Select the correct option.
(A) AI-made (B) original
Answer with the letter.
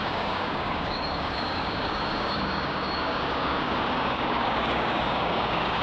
A